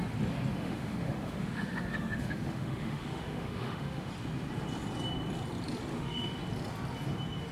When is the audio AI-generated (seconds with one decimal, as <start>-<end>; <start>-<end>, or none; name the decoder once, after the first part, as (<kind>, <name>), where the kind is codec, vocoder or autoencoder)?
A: 0.5-4.1 (autoencoder, DAC-VAE); 5.9-6.4